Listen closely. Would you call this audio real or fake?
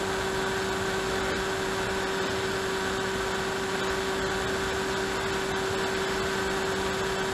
real